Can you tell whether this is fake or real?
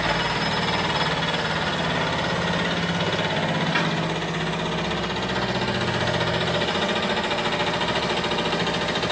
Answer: real